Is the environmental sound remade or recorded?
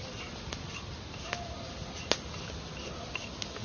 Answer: recorded